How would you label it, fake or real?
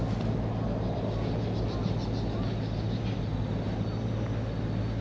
real